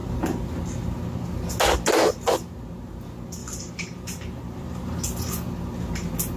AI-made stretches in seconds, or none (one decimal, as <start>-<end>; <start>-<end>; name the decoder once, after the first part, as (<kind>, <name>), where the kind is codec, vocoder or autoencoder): 3.4-5.0 (vocoder, BigVGAN v2)